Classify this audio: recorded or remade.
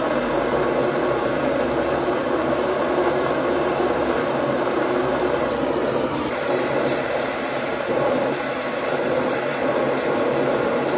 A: remade